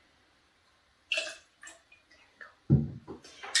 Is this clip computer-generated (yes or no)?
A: no